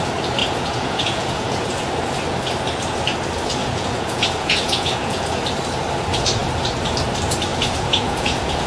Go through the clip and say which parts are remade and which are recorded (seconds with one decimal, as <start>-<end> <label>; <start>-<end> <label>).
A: 0.0-0.4 recorded; 0.4-1.8 remade; 1.8-3.6 recorded; 3.6-5.3 remade; 5.3-7.5 recorded; 7.5-8.7 remade